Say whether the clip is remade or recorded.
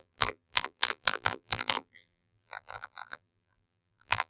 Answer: remade